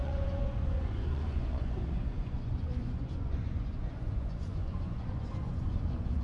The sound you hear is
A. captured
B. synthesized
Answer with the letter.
B